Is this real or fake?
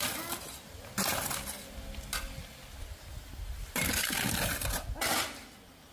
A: real